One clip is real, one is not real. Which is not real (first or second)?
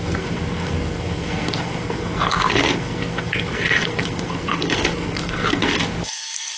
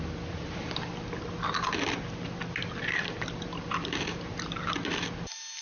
first